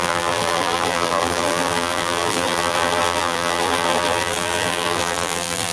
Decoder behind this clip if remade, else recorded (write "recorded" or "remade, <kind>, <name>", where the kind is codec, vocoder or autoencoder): remade, vocoder, BigVGAN v2